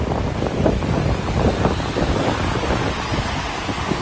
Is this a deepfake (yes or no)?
no